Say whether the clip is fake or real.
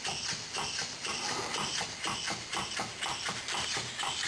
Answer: fake